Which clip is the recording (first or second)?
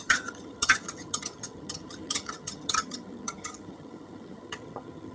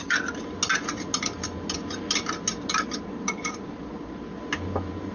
second